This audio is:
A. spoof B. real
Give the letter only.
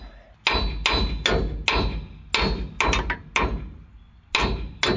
B